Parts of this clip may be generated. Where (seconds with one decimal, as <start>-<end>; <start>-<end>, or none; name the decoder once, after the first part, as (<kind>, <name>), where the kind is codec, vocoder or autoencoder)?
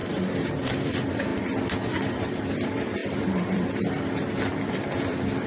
0.0-1.3 (vocoder, BigVGAN v2); 2.1-5.5